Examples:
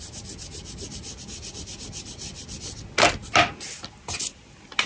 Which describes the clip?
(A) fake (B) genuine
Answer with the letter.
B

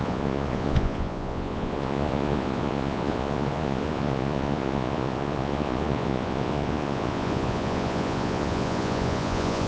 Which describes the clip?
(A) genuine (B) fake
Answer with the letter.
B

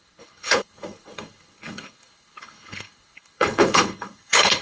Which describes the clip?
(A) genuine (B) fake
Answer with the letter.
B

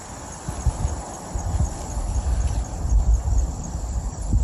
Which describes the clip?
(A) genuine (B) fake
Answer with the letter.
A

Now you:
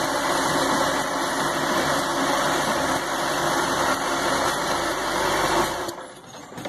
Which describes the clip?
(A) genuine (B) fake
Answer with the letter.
A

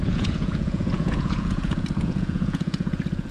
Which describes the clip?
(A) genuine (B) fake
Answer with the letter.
B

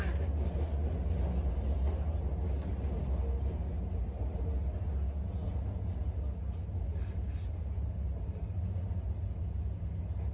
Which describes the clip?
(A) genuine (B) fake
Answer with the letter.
A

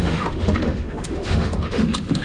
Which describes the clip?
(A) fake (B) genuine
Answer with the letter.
A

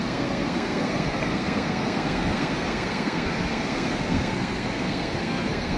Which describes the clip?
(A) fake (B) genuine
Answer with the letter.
A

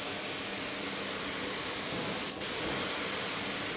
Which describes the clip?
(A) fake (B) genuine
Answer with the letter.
B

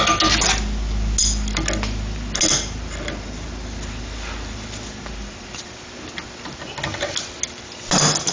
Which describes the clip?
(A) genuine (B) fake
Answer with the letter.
A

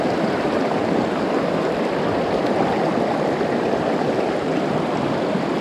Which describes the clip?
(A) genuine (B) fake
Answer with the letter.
A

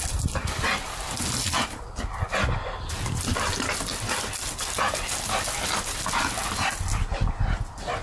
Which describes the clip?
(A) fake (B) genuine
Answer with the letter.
B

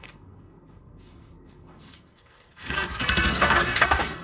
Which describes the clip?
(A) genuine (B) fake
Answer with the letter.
B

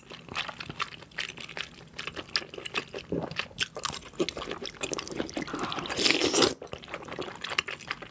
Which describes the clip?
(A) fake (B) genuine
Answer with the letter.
B